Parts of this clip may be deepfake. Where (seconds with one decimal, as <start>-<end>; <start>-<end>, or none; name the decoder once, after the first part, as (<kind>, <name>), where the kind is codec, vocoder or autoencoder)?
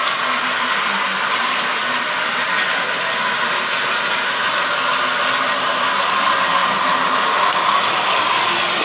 none